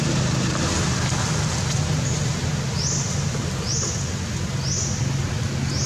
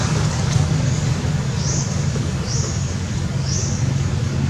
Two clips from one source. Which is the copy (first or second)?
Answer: second